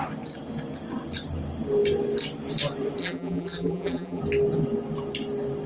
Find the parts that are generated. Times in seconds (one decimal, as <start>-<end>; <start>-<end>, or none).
3.0-4.2